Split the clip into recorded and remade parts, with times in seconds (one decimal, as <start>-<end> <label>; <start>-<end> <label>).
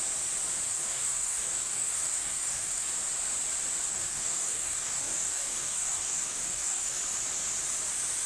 0.0-0.7 recorded; 0.7-2.9 remade; 2.9-3.9 recorded; 3.9-7.0 remade; 7.0-8.3 recorded